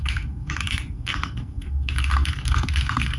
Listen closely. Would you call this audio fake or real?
fake